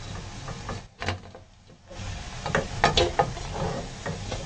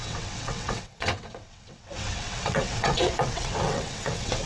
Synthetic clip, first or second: second